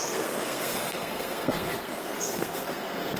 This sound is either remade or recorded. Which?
remade